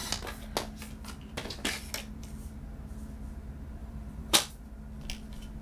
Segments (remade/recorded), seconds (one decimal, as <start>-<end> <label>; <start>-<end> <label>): 0.0-3.8 recorded; 3.8-4.5 remade; 4.5-5.6 recorded